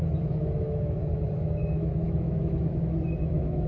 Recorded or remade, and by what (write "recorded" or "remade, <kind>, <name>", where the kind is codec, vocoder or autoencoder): remade, autoencoder, DAC-VAE